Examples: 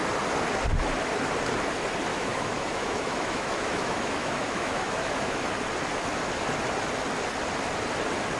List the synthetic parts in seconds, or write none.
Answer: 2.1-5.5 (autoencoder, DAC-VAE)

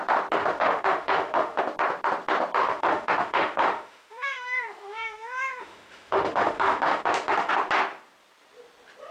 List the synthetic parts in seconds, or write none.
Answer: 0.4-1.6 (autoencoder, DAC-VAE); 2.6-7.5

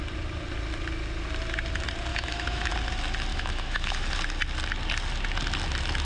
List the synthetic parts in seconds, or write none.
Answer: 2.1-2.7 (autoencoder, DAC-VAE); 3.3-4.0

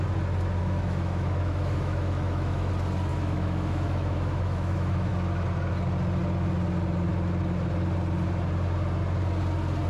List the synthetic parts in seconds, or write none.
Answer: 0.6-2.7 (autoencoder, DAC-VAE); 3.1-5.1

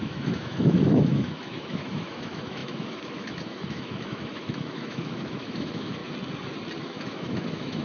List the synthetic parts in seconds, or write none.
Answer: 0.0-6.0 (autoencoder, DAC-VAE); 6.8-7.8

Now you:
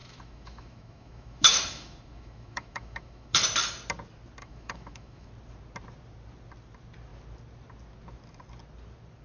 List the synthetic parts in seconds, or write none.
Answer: 0.0-3.4 (autoencoder, DAC-VAE); 4.4-5.3

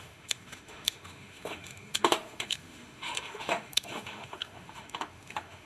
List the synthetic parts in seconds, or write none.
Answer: 0.0-5.7 (autoencoder, DAC-VAE)